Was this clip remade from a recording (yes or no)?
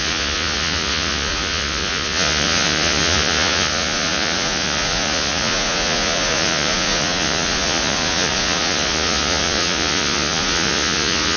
yes